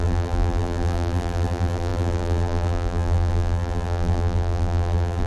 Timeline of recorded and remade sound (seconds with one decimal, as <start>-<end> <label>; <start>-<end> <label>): 0.0-5.3 remade